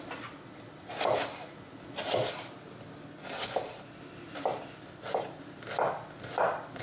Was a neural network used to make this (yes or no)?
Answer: no